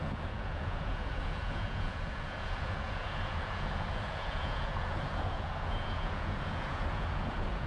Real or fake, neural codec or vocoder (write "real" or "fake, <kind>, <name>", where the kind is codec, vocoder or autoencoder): fake, vocoder, Vocos